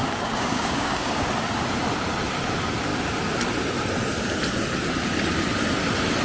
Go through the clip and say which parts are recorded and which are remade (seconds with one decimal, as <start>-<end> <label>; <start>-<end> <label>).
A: 0.0-1.3 remade; 1.3-6.2 recorded